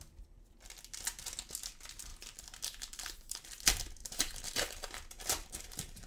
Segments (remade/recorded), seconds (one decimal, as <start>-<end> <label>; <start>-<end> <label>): 0.0-2.1 recorded; 2.1-3.5 remade; 3.5-4.0 recorded; 4.0-6.1 remade